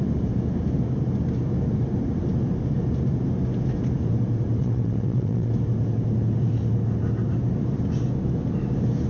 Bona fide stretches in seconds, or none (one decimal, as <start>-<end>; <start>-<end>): 0.0-4.6; 5.5-9.1